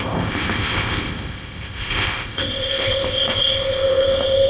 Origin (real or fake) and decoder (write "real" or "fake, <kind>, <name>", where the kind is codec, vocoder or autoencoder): fake, codec, ZipCodec